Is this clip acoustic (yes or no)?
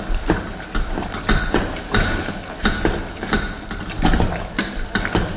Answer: yes